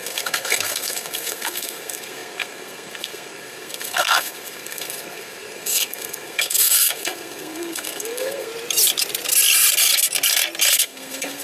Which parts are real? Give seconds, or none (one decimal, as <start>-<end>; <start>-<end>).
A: 8.5-10.7